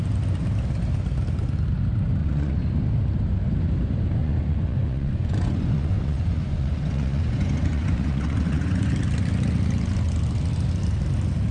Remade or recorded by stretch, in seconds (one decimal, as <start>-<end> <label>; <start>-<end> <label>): 0.0-2.2 recorded; 2.2-2.7 remade; 2.7-4.2 recorded; 4.2-8.9 remade; 8.9-11.5 recorded